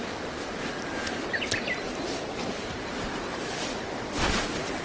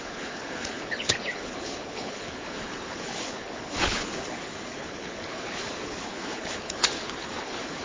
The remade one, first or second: second